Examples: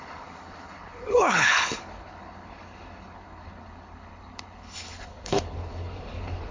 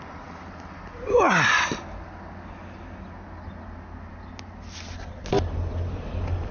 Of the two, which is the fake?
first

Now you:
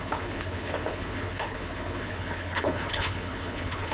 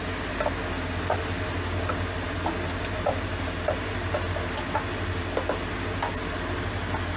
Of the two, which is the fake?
first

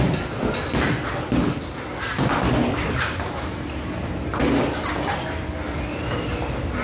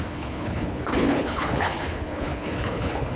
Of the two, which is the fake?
second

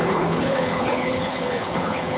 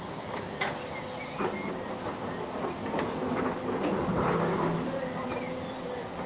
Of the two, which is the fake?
first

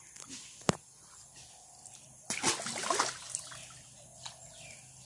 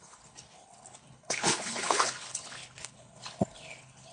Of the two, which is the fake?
second